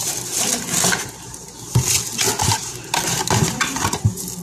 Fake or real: real